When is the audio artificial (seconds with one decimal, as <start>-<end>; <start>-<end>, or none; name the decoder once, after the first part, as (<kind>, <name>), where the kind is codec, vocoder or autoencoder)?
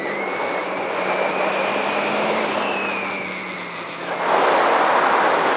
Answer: 0.6-1.1 (vocoder, Vocos)